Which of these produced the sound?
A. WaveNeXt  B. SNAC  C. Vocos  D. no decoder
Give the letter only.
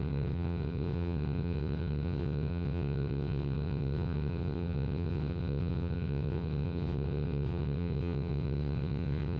A